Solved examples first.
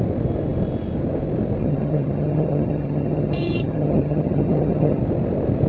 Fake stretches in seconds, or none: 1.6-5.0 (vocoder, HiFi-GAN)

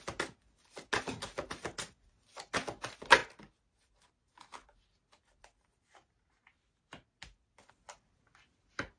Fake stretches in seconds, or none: none

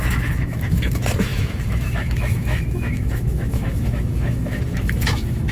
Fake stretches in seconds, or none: 0.0-5.5 (autoencoder, DAC-VAE)